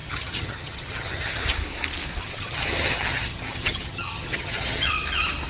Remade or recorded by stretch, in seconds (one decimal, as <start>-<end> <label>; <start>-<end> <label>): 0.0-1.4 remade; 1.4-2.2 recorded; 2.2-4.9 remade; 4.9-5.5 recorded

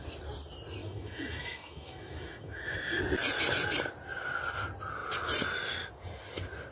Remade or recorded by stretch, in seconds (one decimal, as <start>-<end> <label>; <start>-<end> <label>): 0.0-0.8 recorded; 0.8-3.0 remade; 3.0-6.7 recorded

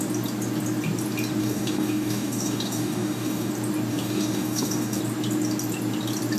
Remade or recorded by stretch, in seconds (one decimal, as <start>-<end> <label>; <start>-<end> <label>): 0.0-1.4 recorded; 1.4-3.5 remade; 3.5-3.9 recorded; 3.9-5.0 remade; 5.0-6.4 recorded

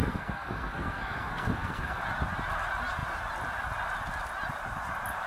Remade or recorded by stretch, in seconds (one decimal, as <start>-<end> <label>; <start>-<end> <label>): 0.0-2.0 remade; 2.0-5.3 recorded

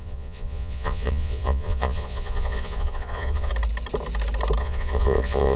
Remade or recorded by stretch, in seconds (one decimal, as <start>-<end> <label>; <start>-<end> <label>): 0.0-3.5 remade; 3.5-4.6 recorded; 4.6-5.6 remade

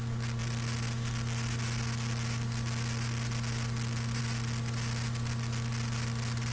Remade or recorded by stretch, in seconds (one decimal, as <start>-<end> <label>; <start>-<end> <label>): 0.0-6.5 recorded

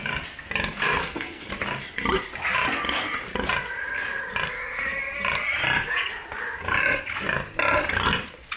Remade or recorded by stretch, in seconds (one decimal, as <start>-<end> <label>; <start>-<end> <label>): 0.0-1.0 recorded; 1.0-1.5 remade; 1.5-8.6 recorded

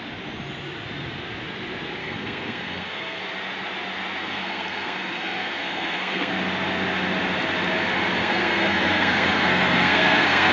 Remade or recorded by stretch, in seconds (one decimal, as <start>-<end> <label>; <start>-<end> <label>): 0.0-2.0 recorded; 2.0-3.2 remade; 3.2-4.2 recorded; 4.2-6.3 remade; 6.3-8.2 recorded; 8.2-10.5 remade